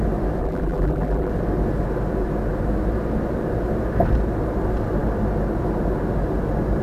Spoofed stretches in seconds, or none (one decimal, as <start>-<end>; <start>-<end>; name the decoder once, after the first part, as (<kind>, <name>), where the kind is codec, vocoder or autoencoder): 0.4-1.3 (vocoder, BigVGAN v2)